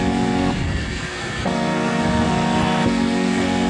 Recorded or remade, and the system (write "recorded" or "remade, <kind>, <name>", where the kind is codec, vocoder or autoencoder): remade, codec, SNAC